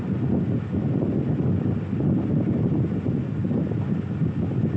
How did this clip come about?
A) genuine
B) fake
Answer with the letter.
A